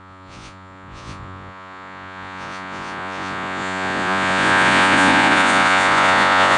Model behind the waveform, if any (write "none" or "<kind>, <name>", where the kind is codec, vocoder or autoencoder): vocoder, Vocos